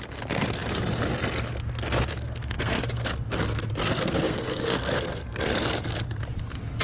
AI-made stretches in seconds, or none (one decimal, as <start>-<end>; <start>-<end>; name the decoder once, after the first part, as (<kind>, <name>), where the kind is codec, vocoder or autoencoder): 2.1-3.1 (codec, SNAC); 3.8-5.9